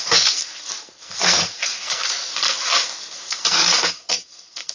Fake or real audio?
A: fake